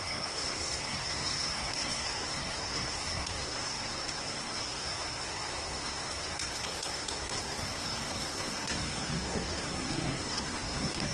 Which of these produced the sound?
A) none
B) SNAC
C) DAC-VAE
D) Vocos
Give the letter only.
B